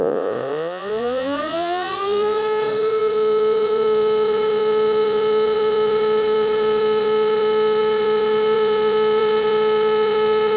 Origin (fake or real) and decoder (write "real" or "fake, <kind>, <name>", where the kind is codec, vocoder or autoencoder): fake, vocoder, Vocos